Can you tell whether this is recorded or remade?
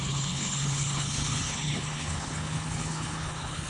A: remade